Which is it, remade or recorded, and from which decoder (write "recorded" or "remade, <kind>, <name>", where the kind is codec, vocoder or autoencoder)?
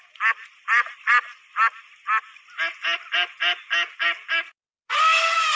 recorded